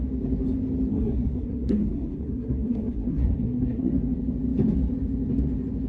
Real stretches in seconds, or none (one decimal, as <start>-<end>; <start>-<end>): 0.0-0.9; 3.9-5.9